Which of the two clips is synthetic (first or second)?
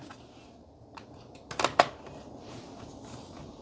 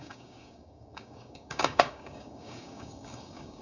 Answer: second